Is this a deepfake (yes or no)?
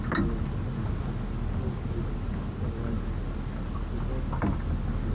no